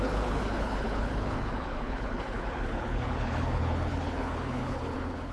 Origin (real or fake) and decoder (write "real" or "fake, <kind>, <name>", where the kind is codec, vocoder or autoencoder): fake, codec, HILCodec